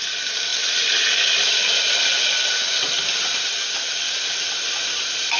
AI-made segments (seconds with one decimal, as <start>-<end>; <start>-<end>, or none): none